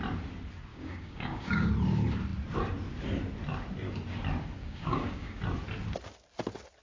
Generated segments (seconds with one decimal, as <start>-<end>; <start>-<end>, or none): 0.7-1.7; 4.6-5.4